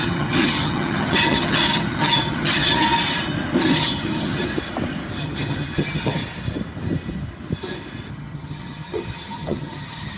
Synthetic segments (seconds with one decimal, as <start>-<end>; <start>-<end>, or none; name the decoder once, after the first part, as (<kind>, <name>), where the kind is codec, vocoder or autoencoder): 0.0-2.9 (vocoder, HiFi-GAN); 3.6-4.5; 5.2-6.2; 8.1-10.2